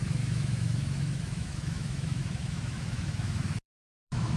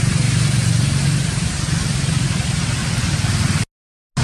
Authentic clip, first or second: second